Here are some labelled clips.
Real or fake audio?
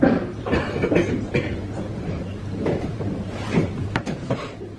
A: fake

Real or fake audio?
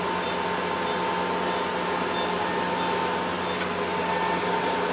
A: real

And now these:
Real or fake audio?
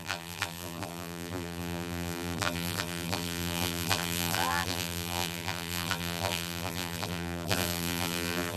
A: fake